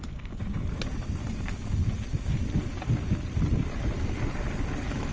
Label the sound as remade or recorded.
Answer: recorded